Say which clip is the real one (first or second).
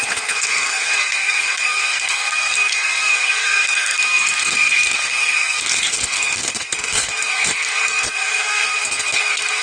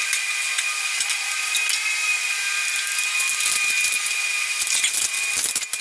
second